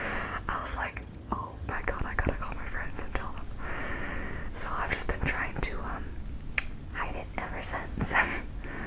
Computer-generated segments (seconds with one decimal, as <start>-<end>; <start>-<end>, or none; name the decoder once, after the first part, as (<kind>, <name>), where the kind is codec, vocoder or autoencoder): 0.6-1.7 (vocoder, HiFi-GAN)